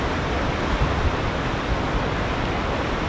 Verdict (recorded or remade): recorded